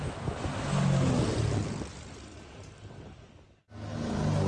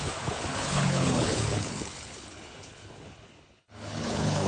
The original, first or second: first